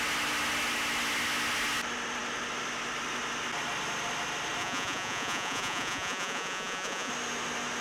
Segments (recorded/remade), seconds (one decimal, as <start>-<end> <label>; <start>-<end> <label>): 0.0-4.6 recorded; 4.6-7.1 remade; 7.1-7.8 recorded